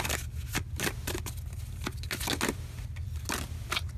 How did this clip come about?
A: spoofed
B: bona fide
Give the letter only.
B